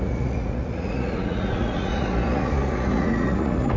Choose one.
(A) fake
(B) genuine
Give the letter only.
A